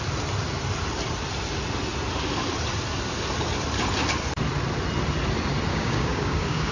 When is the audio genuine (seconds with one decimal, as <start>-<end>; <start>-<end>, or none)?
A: 0.0-5.7